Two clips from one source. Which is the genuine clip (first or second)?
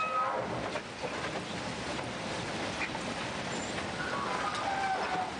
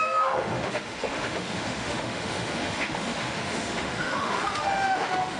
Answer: first